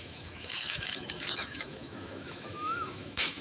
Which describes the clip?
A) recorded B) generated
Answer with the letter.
B